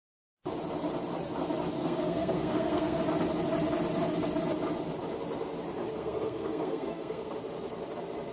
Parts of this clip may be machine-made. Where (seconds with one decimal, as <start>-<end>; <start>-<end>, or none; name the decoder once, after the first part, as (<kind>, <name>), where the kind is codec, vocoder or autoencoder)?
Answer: 1.8-3.0 (codec, SNAC); 5.8-7.3